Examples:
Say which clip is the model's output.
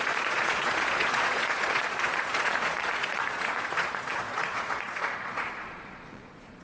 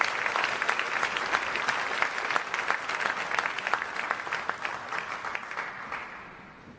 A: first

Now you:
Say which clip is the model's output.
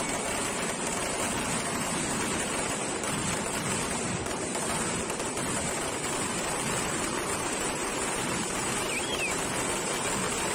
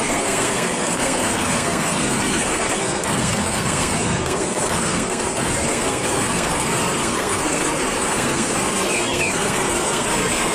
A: second